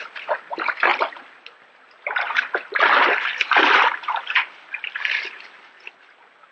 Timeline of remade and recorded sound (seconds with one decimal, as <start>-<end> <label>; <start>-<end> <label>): 0.0-6.5 recorded